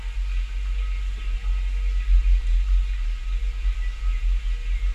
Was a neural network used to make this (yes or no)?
no